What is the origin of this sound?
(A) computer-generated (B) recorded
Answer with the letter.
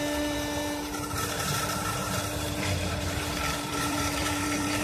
A